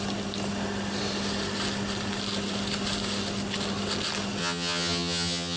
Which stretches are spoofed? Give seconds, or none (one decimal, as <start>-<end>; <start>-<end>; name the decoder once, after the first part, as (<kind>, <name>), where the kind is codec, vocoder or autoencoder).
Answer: 4.4-5.6 (vocoder, HiFi-GAN)